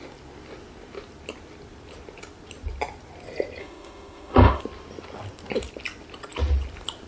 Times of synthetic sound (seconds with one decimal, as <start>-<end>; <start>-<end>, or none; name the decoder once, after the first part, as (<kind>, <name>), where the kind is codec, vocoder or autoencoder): 3.6-4.6 (autoencoder, DAC-VAE)